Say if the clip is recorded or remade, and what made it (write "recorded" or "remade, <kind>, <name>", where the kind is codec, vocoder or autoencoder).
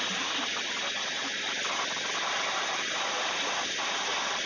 recorded